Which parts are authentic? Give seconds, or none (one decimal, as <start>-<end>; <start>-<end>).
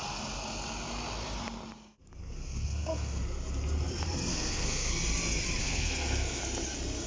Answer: 0.0-2.2; 3.2-4.3; 4.9-5.6; 6.4-7.1